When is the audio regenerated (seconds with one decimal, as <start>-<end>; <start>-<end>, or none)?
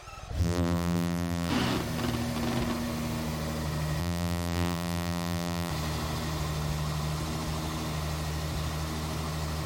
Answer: 0.4-1.5; 4.0-5.7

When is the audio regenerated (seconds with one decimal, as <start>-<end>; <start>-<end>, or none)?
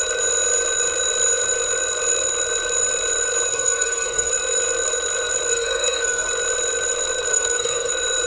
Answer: 3.5-4.3; 5.5-6.3; 7.3-7.9